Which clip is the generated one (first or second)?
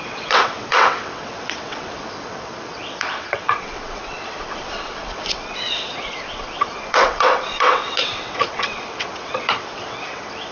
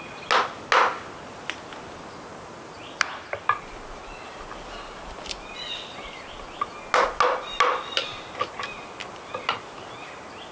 first